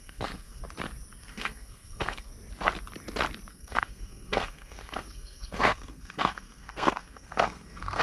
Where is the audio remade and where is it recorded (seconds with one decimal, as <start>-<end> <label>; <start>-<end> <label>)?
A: 0.0-0.6 remade; 0.6-1.2 recorded; 1.2-2.3 remade; 2.3-3.5 recorded; 3.5-8.0 remade